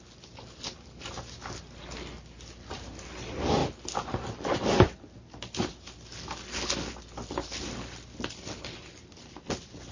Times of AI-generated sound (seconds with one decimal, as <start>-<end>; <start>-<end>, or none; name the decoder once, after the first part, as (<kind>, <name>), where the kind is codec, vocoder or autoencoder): none